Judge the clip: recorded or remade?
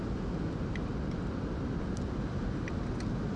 recorded